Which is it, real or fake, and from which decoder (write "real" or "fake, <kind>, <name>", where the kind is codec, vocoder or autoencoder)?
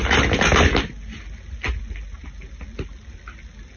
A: real